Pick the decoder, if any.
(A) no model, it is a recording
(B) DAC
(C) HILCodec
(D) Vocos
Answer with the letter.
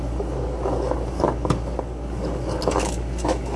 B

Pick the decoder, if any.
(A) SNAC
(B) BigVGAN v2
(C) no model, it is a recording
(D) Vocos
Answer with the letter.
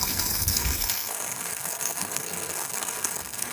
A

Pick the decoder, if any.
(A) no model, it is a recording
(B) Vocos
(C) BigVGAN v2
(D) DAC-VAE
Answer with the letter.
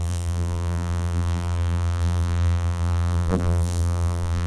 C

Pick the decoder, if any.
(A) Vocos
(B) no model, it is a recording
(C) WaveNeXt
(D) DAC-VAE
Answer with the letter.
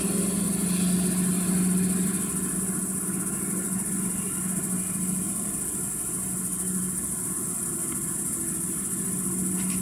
B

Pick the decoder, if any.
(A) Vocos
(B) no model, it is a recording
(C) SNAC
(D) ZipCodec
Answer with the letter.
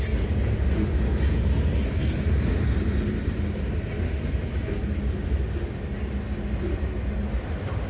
B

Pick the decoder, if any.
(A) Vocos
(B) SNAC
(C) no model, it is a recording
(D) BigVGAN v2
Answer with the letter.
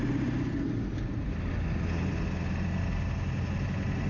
C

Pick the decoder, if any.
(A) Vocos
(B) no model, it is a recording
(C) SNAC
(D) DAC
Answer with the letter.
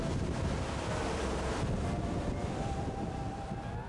B